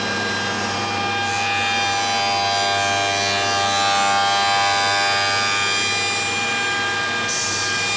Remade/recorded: recorded